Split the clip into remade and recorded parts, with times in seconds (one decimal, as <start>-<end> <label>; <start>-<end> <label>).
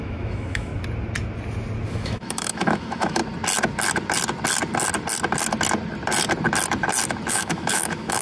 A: 0.0-0.7 remade; 0.7-1.9 recorded; 1.9-3.2 remade; 3.2-7.3 recorded; 7.3-8.2 remade